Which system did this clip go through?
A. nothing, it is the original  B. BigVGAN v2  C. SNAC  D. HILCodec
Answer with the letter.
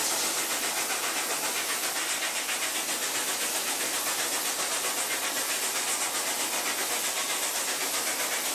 A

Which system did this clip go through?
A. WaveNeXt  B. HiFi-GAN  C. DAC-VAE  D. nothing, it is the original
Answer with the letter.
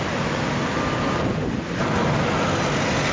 D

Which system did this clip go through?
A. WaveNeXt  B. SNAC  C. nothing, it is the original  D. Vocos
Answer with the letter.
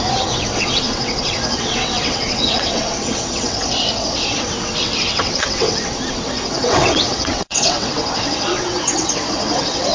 A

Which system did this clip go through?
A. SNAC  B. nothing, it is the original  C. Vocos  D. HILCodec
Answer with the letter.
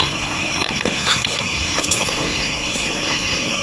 A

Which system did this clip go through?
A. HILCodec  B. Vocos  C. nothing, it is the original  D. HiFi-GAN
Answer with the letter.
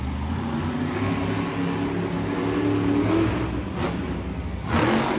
C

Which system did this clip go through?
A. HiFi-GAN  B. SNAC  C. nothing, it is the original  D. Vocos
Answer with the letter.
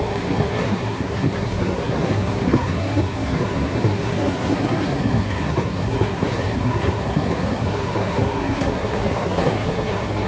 B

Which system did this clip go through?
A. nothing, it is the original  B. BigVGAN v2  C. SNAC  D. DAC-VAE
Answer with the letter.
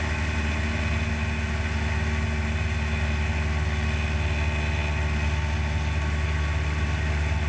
A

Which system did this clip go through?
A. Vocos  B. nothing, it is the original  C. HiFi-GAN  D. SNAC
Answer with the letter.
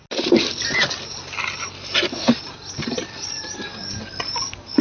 B